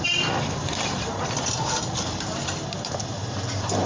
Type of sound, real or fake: fake